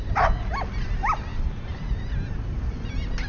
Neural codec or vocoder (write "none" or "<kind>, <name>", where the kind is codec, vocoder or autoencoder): none